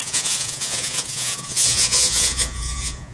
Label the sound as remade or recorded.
remade